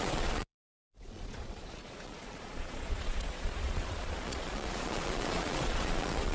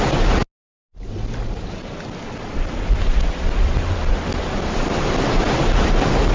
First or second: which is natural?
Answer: second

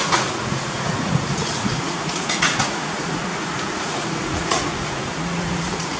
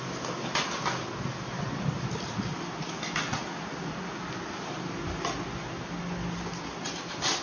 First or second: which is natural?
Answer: second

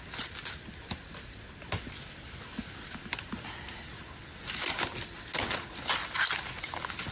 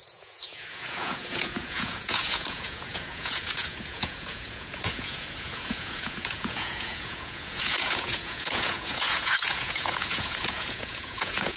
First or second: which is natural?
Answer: first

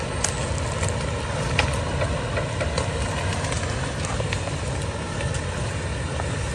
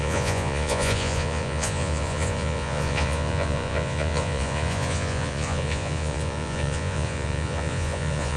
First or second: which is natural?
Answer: first